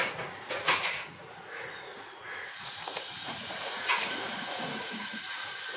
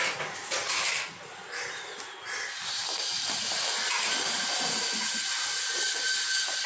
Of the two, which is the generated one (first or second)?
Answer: first